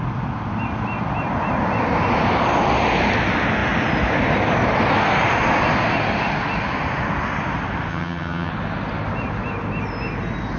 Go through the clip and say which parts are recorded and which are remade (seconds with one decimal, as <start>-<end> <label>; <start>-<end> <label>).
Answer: 0.0-7.9 recorded; 7.9-8.5 remade; 8.5-10.6 recorded